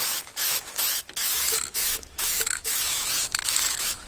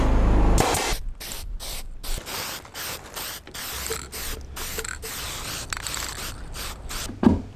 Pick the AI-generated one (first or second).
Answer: first